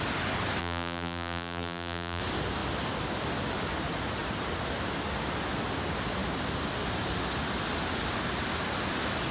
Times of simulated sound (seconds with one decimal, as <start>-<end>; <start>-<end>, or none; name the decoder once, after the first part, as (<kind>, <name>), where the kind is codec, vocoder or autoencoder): 0.6-2.2 (vocoder, BigVGAN v2)